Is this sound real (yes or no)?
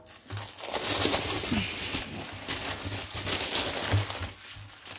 yes